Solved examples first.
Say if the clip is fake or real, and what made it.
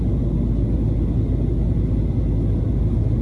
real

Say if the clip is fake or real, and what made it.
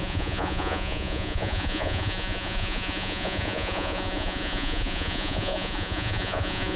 fake, vocoder, Vocos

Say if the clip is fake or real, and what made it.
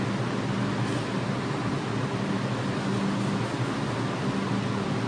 real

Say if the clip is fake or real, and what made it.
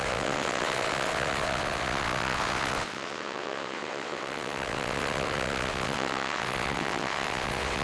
fake, vocoder, WaveNeXt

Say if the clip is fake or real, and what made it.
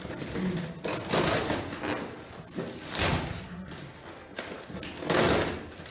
real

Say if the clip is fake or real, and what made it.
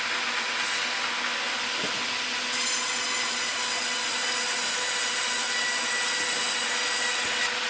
real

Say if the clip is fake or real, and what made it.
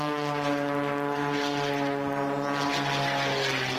real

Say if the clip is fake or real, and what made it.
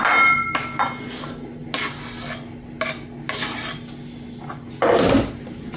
real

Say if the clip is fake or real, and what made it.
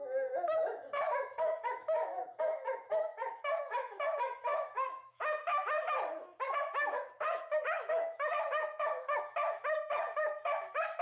fake, autoencoder, DAC-VAE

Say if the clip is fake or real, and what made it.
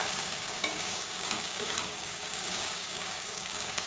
fake, codec, DAC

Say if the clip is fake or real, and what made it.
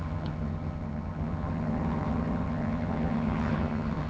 fake, vocoder, HiFi-GAN